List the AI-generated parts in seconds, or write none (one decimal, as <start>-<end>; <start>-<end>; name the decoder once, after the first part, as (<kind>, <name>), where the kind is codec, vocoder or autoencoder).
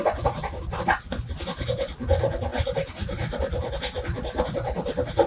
none